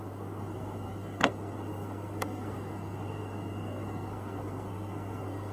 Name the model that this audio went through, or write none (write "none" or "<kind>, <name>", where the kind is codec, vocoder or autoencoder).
codec, SNAC